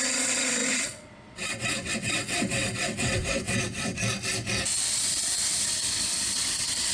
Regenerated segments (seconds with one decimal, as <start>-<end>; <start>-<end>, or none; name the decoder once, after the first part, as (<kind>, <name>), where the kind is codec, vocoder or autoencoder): 0.0-4.0 (vocoder, WaveNeXt); 5.0-6.9